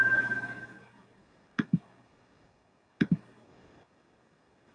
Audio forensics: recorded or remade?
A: remade